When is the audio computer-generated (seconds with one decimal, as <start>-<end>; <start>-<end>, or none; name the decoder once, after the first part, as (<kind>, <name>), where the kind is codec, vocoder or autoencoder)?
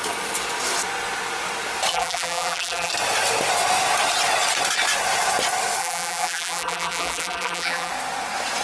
1.9-2.9 (vocoder, BigVGAN v2); 5.8-7.9